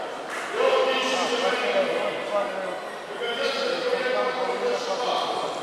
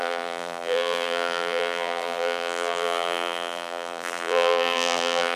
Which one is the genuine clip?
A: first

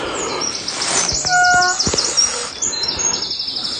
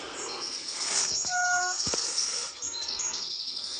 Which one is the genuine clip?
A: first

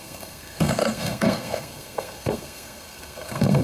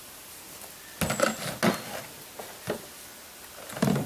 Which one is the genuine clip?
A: second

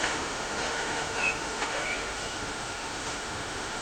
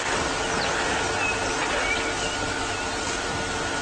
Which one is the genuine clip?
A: second